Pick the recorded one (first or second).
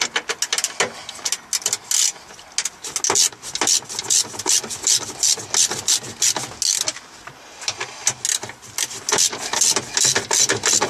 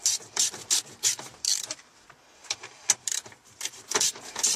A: first